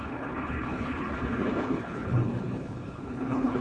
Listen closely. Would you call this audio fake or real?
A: fake